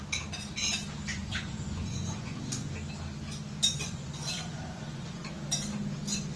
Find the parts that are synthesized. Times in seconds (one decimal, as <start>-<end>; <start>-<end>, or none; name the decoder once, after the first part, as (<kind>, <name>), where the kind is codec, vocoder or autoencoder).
1.1-2.4 (vocoder, Vocos); 3.7-5.3